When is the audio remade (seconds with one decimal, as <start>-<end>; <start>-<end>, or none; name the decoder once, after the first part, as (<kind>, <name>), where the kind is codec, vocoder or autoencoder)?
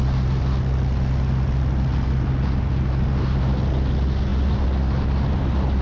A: none